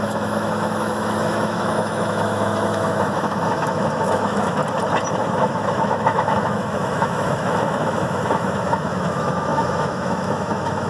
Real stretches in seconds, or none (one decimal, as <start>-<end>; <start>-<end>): 4.6-5.1